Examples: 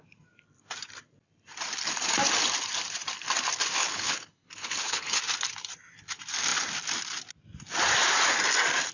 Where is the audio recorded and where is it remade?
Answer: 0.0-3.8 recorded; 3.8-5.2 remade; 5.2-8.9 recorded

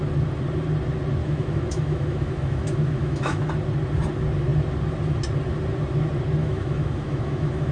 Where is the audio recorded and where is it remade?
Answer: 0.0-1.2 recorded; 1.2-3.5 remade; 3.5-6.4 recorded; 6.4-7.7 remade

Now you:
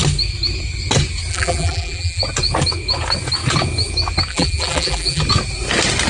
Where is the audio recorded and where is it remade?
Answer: 0.0-1.3 recorded; 1.3-2.2 remade; 2.2-4.3 recorded; 4.3-5.2 remade; 5.2-6.1 recorded

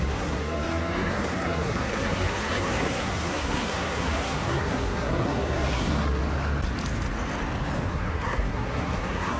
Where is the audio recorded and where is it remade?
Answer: 0.0-6.2 remade; 6.2-7.9 recorded; 7.9-9.4 remade

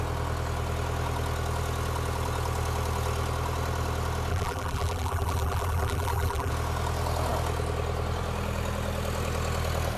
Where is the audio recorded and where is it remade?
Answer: 0.0-4.3 recorded; 4.3-6.5 remade; 6.5-10.0 recorded